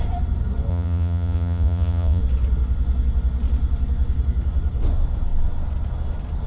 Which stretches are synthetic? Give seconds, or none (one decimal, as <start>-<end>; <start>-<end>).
0.7-2.2